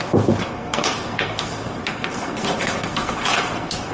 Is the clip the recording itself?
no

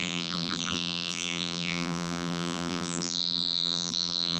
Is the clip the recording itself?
no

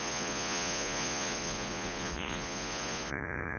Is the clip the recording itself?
no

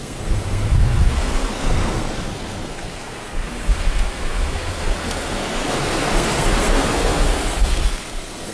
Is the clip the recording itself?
no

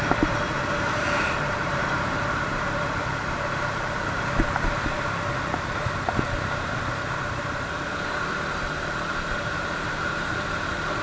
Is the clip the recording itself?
no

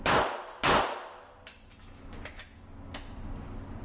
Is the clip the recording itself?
yes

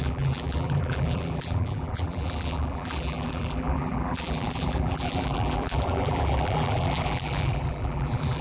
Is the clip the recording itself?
no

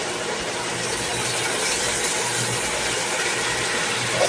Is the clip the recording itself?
yes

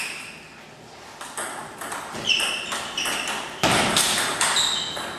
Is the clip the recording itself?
yes